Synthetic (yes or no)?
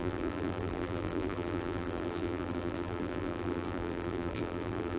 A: yes